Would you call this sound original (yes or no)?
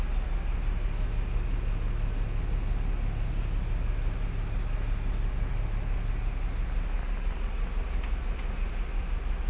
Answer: yes